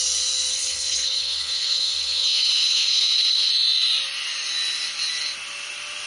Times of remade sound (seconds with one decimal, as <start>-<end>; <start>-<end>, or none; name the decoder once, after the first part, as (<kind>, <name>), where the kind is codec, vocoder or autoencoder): 0.5-3.5 (codec, HILCodec)